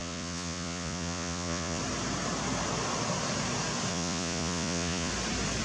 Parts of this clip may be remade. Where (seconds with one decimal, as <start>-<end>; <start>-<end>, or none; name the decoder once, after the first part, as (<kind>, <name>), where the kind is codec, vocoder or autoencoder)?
0.0-1.8 (vocoder, Vocos); 3.9-5.1